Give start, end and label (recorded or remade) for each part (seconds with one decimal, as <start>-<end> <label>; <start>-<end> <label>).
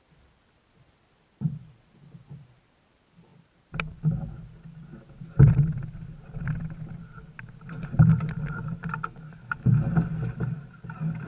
0.0-3.3 recorded; 3.3-4.0 remade; 4.0-11.3 recorded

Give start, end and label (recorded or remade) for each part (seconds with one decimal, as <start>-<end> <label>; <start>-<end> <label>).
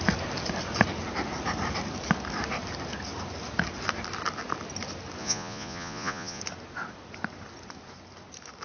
0.0-5.2 recorded; 5.2-6.4 remade; 6.4-8.6 recorded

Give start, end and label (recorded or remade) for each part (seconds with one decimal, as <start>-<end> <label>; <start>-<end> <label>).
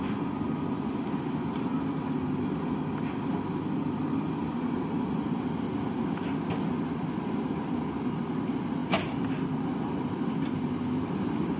0.0-11.6 recorded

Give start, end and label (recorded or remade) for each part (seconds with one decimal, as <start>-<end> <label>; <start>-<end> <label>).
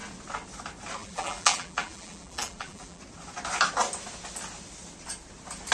0.0-1.0 recorded; 1.0-3.0 remade; 3.0-5.7 recorded